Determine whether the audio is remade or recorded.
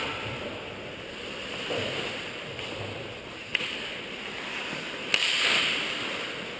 recorded